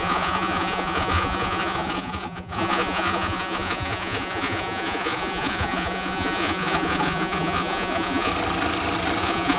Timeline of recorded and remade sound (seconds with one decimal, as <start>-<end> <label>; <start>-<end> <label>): 0.0-8.3 remade; 8.3-9.2 recorded; 9.2-9.6 remade